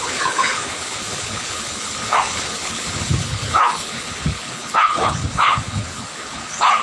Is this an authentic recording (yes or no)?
no